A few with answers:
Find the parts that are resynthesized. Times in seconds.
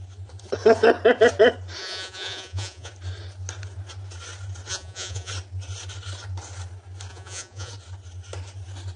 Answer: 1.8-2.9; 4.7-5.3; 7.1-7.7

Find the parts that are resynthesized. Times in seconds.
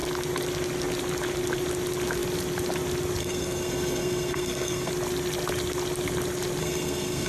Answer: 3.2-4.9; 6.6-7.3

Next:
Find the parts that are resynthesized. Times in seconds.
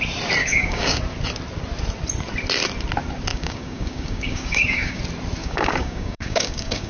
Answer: 0.4-1.0; 3.3-5.0; 5.4-6.9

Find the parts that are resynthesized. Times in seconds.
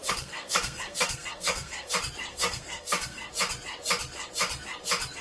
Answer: 0.0-1.9; 2.3-3.3